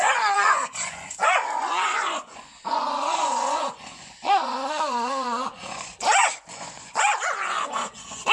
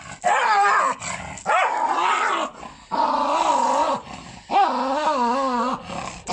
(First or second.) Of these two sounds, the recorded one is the second